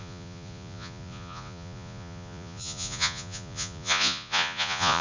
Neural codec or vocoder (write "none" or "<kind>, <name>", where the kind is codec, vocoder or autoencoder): vocoder, Vocos